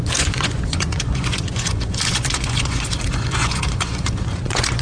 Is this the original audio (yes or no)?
no